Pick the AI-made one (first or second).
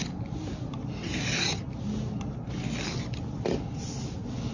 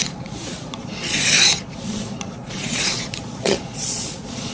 second